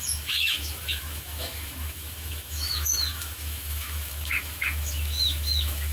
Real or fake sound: fake